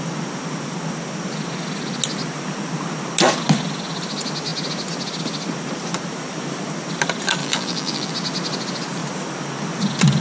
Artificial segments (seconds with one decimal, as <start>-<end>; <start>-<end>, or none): 7.4-8.1